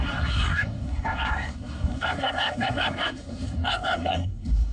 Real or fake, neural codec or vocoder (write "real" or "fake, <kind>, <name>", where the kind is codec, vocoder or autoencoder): fake, codec, SNAC